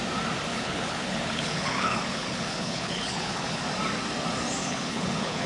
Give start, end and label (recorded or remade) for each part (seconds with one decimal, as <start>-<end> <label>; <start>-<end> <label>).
0.0-0.5 recorded; 0.5-3.6 remade; 3.6-4.6 recorded; 4.6-5.5 remade

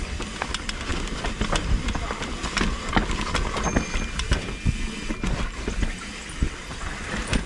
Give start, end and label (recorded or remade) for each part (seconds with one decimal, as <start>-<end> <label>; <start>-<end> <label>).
0.0-7.5 recorded

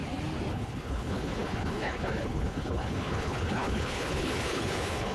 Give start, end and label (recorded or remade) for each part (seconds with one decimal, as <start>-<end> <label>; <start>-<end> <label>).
0.0-0.5 recorded; 0.5-5.1 remade